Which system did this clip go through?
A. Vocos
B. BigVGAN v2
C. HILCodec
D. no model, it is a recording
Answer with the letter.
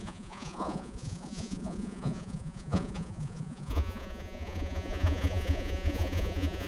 A